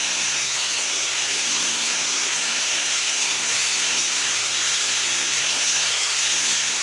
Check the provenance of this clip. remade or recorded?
remade